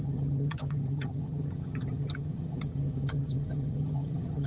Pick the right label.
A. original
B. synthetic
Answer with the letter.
B